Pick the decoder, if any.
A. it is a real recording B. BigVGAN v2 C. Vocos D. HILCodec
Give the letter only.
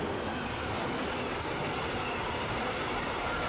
A